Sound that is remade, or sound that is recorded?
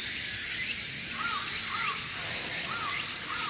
recorded